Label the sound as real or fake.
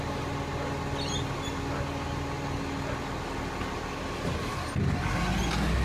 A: real